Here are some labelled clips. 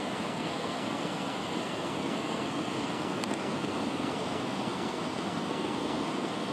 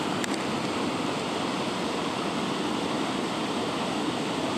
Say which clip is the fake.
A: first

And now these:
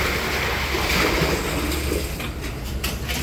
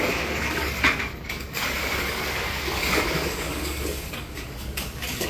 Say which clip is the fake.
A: second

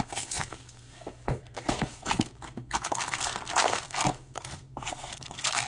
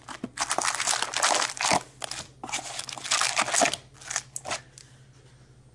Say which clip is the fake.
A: first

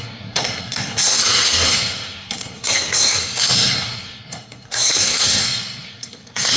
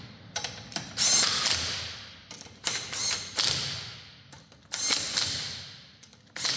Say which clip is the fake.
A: first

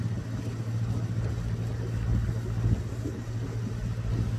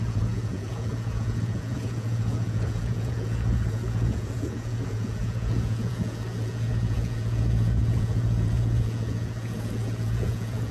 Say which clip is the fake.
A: second